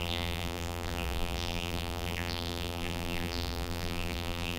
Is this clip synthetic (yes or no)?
yes